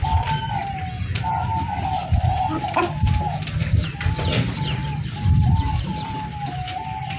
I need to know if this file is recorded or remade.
recorded